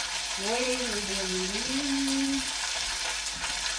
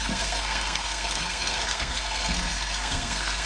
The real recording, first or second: first